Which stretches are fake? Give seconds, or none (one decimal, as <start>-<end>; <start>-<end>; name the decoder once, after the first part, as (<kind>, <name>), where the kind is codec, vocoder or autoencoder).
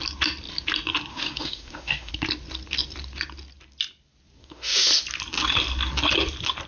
1.1-2.1 (autoencoder, DAC-VAE); 4.4-4.9